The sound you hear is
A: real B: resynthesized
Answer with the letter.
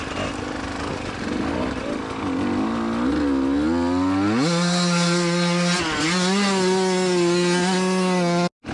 A